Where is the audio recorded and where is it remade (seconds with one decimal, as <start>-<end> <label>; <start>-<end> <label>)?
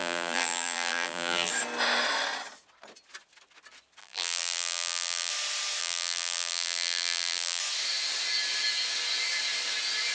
0.0-1.5 remade; 1.5-4.0 recorded; 4.0-5.3 remade; 5.3-5.8 recorded; 5.8-7.6 remade; 7.6-10.1 recorded